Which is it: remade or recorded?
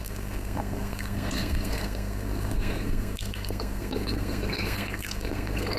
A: remade